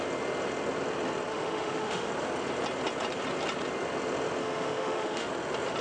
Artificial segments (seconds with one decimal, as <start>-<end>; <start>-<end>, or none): 1.3-2.1; 4.4-5.3